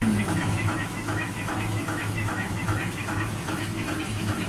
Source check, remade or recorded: remade